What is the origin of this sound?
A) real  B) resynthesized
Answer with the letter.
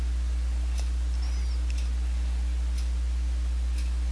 A